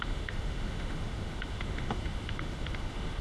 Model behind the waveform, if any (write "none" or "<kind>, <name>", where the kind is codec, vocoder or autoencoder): autoencoder, DAC-VAE